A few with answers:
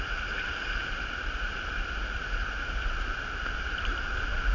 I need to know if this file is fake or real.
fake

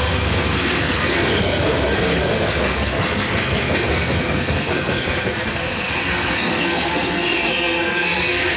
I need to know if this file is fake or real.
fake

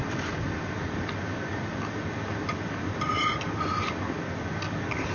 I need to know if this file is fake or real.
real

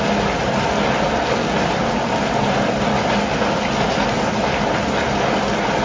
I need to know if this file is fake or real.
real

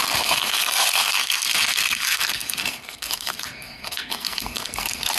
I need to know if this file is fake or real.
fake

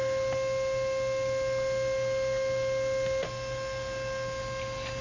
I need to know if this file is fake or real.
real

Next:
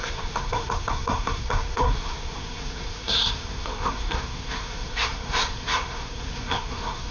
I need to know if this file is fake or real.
fake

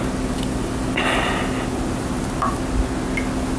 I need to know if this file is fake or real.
real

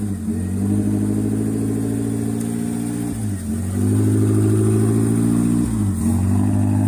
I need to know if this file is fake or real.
real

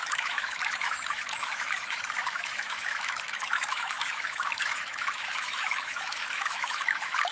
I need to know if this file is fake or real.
fake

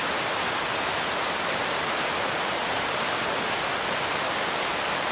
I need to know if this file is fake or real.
real